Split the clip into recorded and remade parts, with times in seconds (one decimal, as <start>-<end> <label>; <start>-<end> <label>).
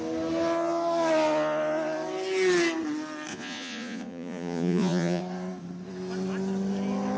0.0-3.3 recorded; 3.3-5.2 remade; 5.2-7.2 recorded